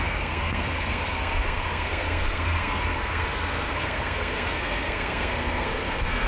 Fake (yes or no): yes